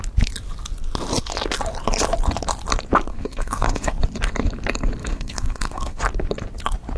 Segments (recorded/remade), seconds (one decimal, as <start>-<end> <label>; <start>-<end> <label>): 0.0-3.1 recorded; 3.1-3.9 remade; 3.9-5.0 recorded; 5.0-6.0 remade; 6.0-7.0 recorded